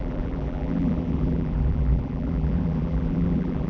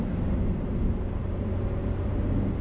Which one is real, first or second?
second